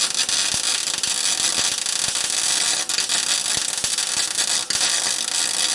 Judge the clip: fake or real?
real